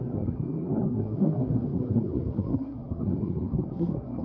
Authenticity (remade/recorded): remade